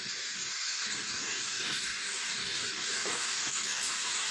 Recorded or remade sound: remade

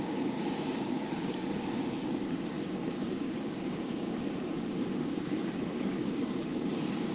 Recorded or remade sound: remade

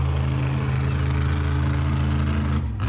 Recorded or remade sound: recorded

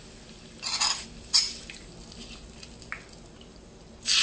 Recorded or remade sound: recorded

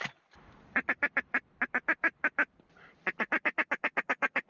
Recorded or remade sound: recorded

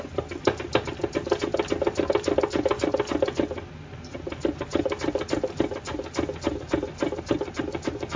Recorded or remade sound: recorded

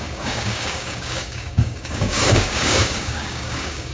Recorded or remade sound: remade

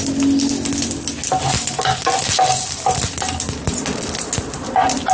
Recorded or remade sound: recorded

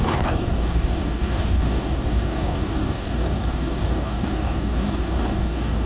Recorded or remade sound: remade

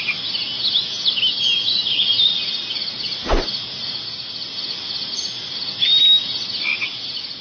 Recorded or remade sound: recorded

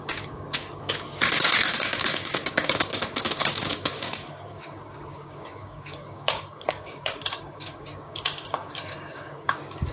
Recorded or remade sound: remade